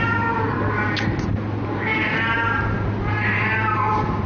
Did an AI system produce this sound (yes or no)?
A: no